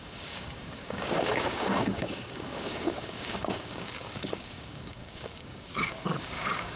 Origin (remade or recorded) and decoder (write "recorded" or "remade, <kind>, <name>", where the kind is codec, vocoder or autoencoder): remade, codec, DAC